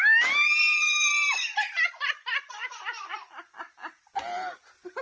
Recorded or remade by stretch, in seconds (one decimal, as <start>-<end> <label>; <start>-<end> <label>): 0.0-0.6 recorded; 0.6-3.6 remade; 3.6-5.0 recorded